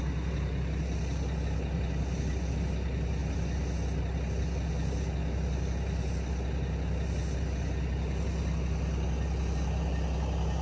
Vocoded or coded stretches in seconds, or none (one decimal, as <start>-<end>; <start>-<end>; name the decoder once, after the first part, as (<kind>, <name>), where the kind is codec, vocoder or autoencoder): none